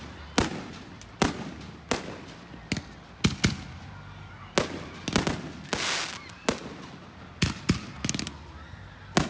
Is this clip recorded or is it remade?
recorded